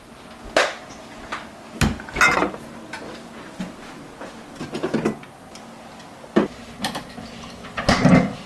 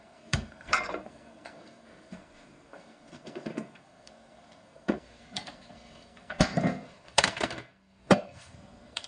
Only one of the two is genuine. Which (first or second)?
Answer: first